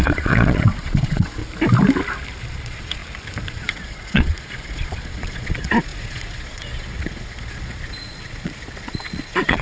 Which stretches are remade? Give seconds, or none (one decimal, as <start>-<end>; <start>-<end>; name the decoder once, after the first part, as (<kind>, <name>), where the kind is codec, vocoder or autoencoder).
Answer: 0.0-1.4 (vocoder, Vocos); 2.5-3.0; 3.5-9.6